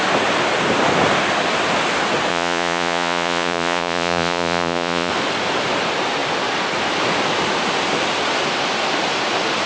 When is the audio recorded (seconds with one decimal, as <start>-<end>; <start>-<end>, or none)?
0.0-2.3; 5.1-9.7